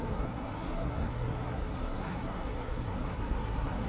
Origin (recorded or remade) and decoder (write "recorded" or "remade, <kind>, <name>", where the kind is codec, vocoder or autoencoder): remade, codec, SNAC